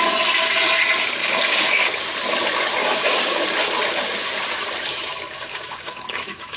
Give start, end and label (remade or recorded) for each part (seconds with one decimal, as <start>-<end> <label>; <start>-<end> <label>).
0.0-1.2 recorded; 1.2-2.0 remade; 2.0-2.8 recorded; 2.8-3.4 remade; 3.4-5.5 recorded; 5.5-6.6 remade